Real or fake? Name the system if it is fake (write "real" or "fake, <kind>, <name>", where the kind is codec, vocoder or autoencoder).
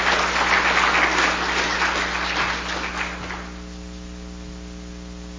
real